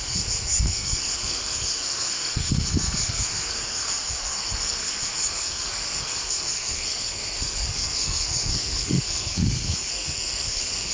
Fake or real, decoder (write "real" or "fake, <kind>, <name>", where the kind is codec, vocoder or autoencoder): fake, codec, SNAC